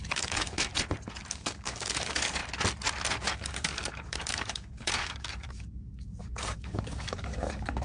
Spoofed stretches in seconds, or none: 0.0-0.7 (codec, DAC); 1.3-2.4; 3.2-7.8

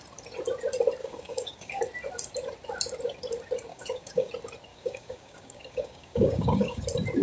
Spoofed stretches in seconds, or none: 1.0-1.8 (codec, DAC); 3.7-4.3; 4.7-6.8

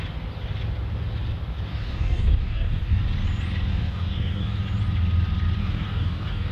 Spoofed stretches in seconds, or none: 1.7-3.0 (codec, DAC); 3.7-4.6; 5.6-6.5

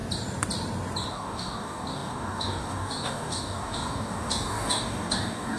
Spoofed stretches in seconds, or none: 1.1-5.6 (codec, DAC)

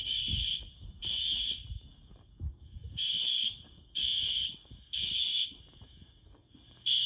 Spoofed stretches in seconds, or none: 0.0-7.1 (codec, DAC)